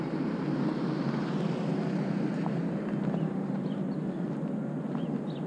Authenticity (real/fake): real